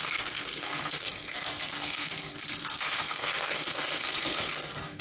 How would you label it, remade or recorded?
remade